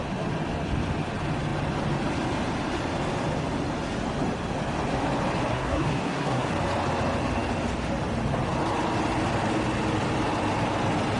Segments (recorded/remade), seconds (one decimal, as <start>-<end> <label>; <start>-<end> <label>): 0.0-5.5 recorded; 5.5-6.5 remade; 6.5-11.2 recorded